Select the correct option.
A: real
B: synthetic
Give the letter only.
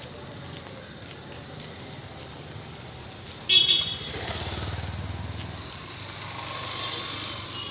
A